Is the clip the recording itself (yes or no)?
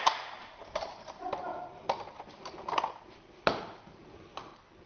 yes